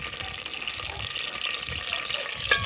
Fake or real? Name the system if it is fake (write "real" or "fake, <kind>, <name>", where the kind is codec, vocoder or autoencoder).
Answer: real